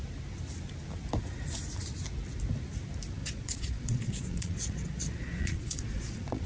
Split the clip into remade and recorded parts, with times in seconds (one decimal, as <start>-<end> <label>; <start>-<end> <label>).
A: 0.0-3.2 recorded; 3.2-6.5 remade